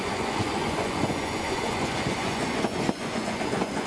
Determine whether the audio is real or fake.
fake